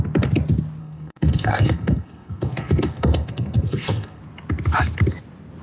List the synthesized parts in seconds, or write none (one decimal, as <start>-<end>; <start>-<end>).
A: 0.8-4.2